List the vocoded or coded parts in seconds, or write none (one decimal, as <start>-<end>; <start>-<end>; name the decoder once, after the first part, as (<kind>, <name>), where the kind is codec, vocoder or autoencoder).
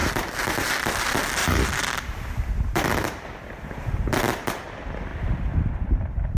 0.0-0.7 (vocoder, BigVGAN v2); 5.1-5.8